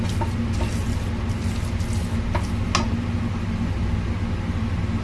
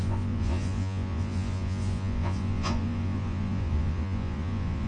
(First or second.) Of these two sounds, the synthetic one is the second